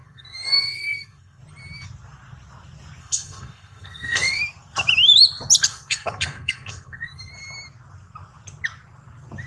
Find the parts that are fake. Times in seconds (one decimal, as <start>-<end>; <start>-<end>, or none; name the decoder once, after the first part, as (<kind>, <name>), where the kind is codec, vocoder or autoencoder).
0.0-1.4 (codec, SNAC); 3.0-4.4; 5.7-7.3